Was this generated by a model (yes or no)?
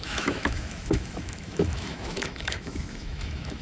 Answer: yes